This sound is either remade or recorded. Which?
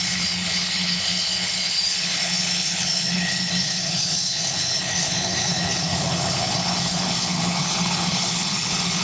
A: remade